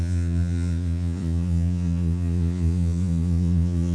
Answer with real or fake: fake